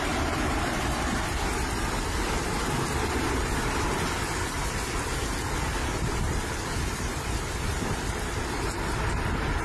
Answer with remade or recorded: remade